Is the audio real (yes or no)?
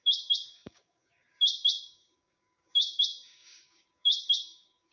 no